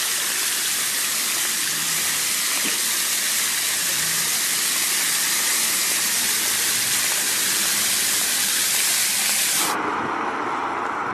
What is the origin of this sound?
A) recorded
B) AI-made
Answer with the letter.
A